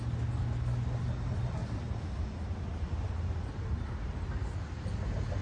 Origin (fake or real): real